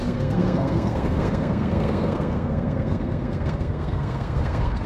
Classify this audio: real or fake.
fake